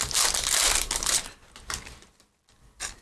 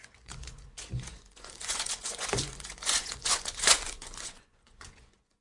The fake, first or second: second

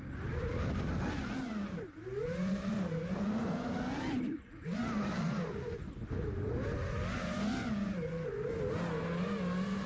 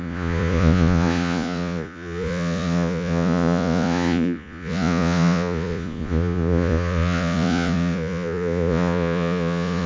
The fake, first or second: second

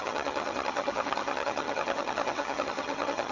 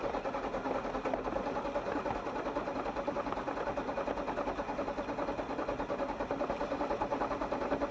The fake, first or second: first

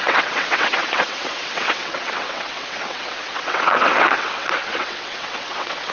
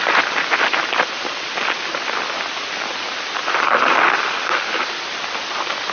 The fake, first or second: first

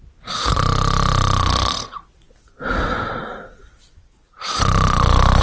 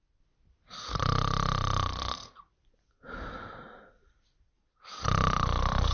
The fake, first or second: second